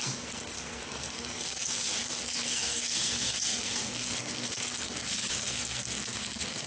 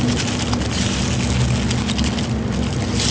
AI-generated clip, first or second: first